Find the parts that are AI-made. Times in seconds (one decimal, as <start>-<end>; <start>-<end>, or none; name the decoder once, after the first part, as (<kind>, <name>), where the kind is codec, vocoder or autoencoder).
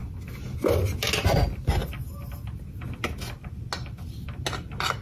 none